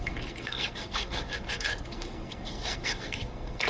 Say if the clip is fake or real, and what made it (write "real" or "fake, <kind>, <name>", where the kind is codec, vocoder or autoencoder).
fake, codec, SNAC